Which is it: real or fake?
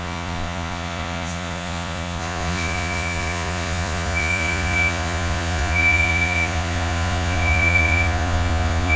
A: fake